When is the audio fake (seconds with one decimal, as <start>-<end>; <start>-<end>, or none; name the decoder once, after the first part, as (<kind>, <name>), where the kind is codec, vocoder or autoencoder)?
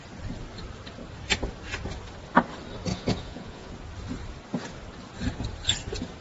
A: 2.9-3.7 (vocoder, Vocos)